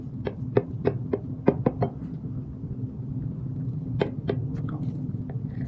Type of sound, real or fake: real